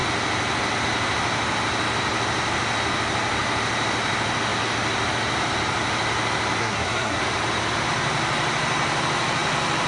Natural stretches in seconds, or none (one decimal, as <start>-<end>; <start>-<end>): 0.0-6.6; 7.2-9.9